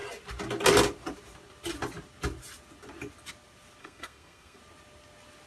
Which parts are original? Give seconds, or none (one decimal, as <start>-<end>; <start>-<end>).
0.0-3.8; 4.6-5.5